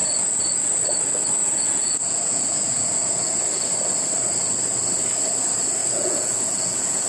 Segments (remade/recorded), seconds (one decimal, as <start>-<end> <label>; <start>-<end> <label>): 0.0-0.7 remade; 0.7-1.4 recorded; 1.4-3.4 remade; 3.4-5.8 recorded; 5.8-7.1 remade

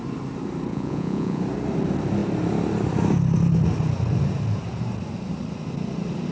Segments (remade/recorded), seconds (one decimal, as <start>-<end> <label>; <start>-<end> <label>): 0.0-0.7 recorded; 0.7-1.4 remade; 1.4-6.3 recorded

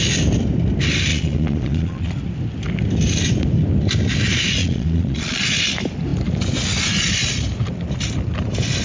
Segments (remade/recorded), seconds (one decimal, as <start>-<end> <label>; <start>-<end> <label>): 0.0-1.1 recorded; 1.1-2.1 remade; 2.1-4.6 recorded; 4.6-5.4 remade; 5.4-8.8 recorded

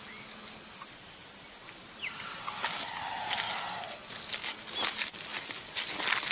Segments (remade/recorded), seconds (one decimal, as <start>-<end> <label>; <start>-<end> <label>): 0.0-6.3 recorded

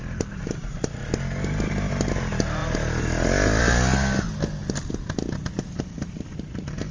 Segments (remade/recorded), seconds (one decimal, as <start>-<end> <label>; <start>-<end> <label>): 0.0-6.9 recorded

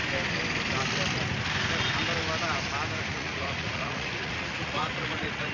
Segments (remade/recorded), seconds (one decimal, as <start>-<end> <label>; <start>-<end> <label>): 0.0-3.1 recorded; 3.1-5.5 remade

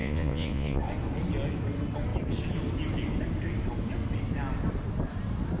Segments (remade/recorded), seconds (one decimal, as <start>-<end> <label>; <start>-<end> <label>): 0.0-0.8 remade; 0.8-5.6 recorded